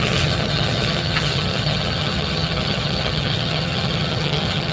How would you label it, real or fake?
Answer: fake